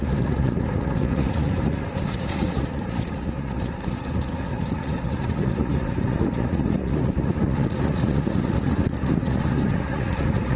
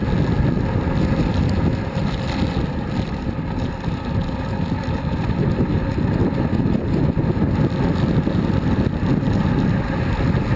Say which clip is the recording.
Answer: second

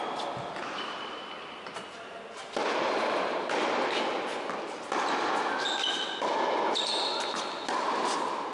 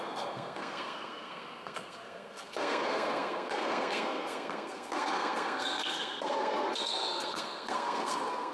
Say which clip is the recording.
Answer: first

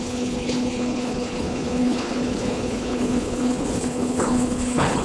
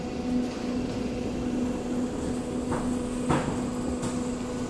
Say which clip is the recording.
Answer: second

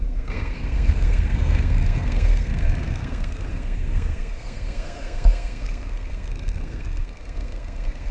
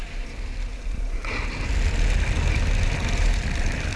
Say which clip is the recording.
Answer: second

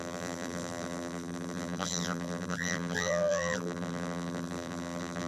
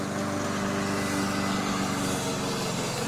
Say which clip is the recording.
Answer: second